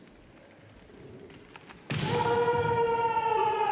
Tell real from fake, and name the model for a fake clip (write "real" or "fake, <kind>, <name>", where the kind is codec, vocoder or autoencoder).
real